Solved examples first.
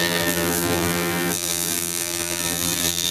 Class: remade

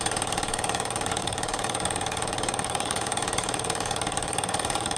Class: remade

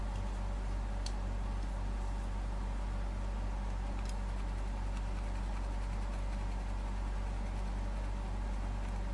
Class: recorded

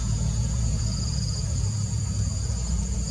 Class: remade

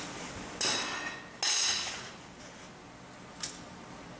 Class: recorded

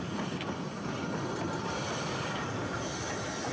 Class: recorded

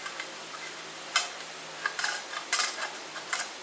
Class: remade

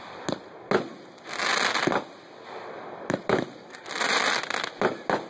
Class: recorded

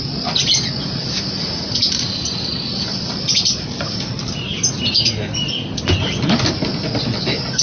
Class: recorded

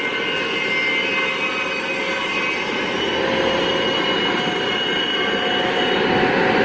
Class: recorded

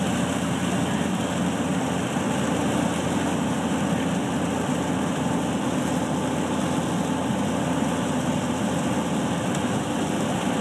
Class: recorded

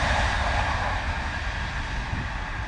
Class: recorded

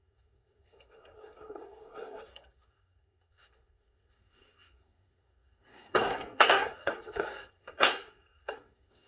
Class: remade